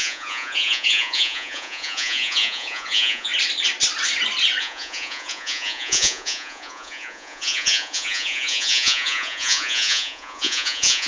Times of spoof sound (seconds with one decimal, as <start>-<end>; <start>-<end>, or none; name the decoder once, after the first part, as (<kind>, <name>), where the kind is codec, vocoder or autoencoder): 0.0-3.3 (vocoder, Vocos); 4.6-11.1